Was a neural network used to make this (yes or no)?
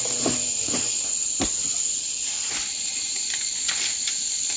no